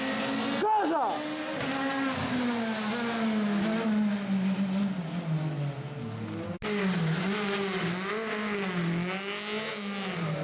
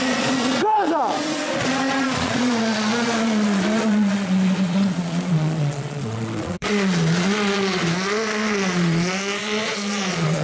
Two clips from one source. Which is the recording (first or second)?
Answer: first